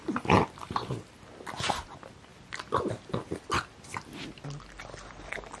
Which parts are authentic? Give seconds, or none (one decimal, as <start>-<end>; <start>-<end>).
0.0-0.6; 1.2-5.6